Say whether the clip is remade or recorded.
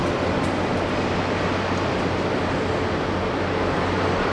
recorded